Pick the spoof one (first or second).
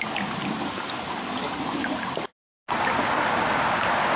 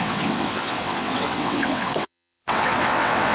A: second